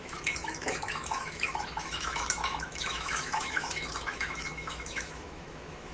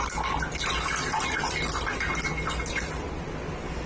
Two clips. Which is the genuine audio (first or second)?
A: second